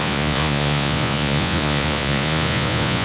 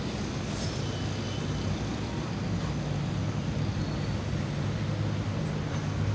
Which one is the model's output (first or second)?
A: first